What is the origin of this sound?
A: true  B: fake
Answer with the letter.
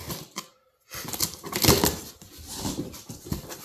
A